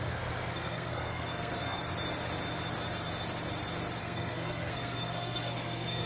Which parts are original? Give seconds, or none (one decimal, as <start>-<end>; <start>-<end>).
1.8-4.0